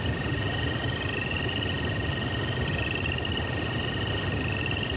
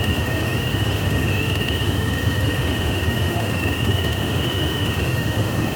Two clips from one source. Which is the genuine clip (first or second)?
first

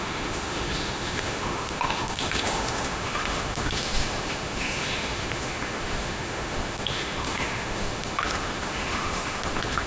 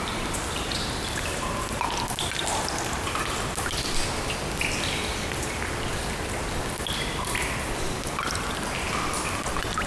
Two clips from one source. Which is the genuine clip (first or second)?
second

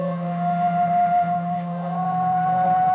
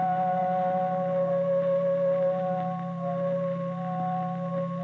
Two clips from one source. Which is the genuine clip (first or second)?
second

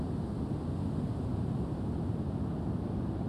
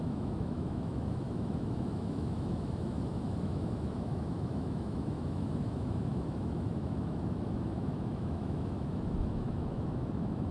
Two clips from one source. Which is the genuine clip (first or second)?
first